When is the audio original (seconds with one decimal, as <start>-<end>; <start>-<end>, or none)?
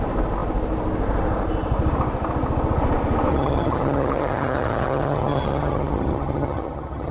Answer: 0.0-3.3